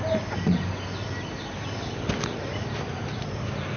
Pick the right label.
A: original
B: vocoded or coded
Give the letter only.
A